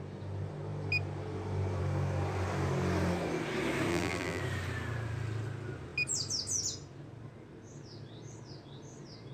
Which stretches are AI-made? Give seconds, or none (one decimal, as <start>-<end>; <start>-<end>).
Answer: 3.9-4.4